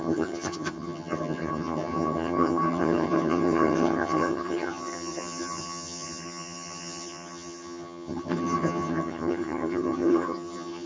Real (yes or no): no